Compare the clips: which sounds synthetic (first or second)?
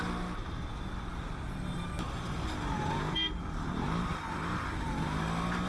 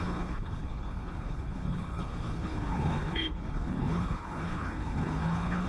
second